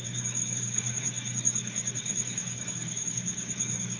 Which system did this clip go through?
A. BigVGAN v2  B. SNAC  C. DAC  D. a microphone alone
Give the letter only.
C